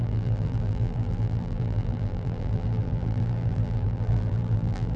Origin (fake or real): fake